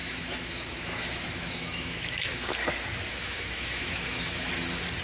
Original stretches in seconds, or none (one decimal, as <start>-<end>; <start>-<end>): 2.5-3.1; 4.5-5.0